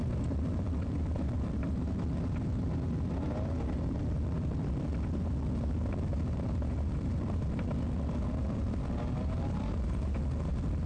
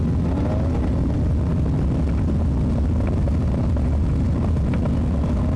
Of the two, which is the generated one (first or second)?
first